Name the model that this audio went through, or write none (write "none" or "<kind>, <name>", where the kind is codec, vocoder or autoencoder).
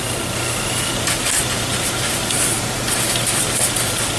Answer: none